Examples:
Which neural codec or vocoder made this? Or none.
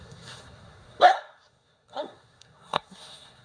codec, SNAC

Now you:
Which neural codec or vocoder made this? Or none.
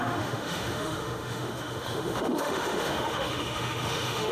autoencoder, DAC-VAE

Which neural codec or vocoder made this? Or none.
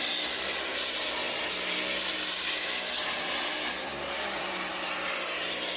none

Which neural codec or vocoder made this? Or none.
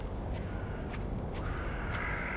codec, DAC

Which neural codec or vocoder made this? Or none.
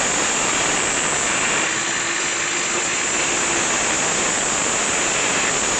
none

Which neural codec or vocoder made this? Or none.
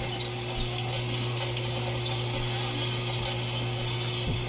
none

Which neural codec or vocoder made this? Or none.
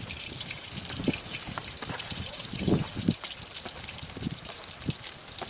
vocoder, BigVGAN v2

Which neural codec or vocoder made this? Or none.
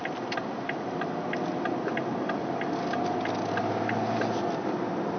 none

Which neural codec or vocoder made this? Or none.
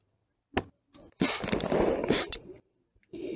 none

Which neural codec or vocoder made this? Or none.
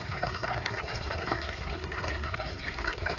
codec, SNAC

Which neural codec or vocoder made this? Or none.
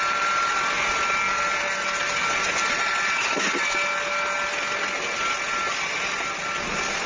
none